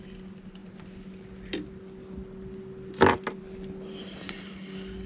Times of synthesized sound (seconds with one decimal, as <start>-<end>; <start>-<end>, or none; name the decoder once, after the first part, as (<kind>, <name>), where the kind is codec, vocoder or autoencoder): none